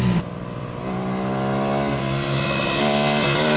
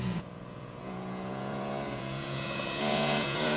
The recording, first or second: first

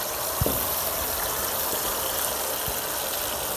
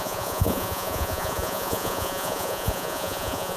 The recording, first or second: first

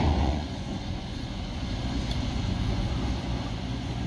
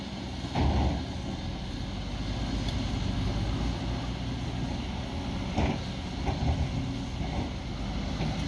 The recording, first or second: second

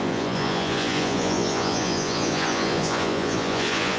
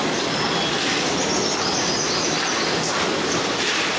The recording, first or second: second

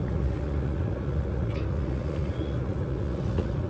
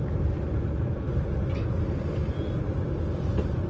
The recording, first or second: second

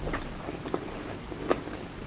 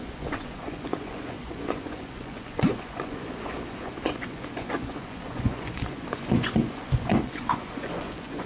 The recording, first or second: first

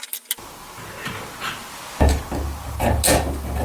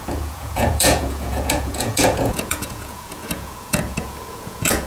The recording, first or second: first